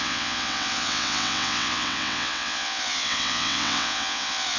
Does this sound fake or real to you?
fake